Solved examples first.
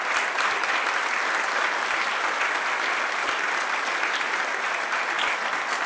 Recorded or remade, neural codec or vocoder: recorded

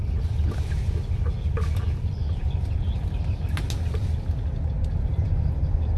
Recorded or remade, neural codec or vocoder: recorded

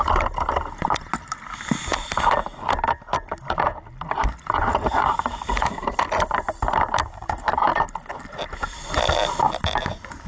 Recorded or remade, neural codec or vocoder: recorded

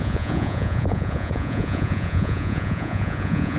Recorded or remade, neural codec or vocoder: remade, vocoder, Vocos